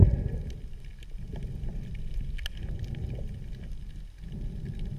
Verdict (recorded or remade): recorded